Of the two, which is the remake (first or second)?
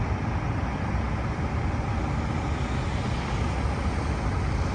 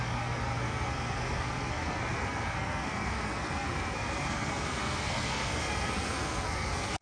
second